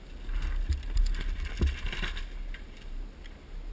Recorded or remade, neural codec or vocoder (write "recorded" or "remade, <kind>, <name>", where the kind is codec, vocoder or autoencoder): recorded